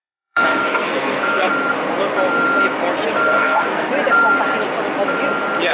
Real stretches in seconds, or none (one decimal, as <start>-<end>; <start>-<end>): 1.5-3.1; 3.9-5.7